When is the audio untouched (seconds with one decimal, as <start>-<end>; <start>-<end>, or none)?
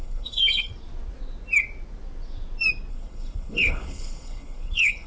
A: 0.7-2.9